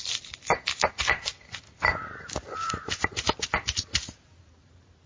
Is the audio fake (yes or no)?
no